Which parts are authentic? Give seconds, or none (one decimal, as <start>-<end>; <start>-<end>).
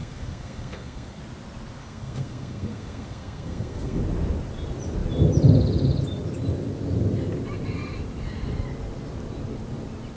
1.2-1.8; 4.0-10.2